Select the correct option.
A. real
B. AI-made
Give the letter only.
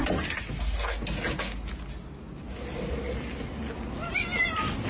A